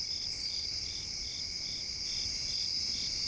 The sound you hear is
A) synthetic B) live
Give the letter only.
B